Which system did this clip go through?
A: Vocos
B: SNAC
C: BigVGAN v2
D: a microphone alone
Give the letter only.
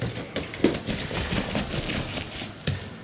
D